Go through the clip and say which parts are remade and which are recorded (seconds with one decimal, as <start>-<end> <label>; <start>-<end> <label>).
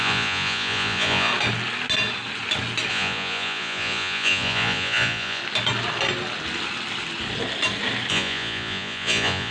0.0-1.3 remade; 1.3-2.9 recorded; 2.9-5.4 remade; 5.4-8.1 recorded; 8.1-9.5 remade